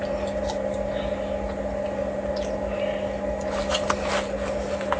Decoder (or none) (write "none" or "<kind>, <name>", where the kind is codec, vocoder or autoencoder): none